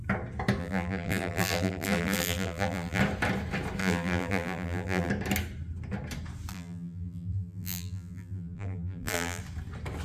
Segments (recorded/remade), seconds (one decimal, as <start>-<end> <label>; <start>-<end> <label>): 0.0-0.6 recorded; 0.6-3.0 remade; 3.0-3.8 recorded; 3.8-5.1 remade; 5.1-6.5 recorded; 6.5-9.4 remade; 9.4-10.0 recorded